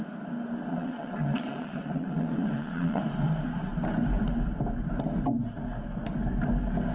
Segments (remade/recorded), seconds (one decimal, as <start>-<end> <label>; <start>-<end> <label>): 0.0-0.7 recorded; 0.7-3.0 remade; 3.0-6.9 recorded